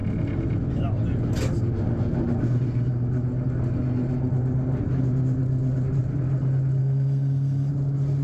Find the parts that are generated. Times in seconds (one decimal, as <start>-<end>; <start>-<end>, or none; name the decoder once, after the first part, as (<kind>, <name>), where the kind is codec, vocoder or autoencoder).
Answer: 6.8-7.7 (codec, SNAC)